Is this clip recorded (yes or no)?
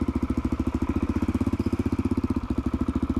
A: yes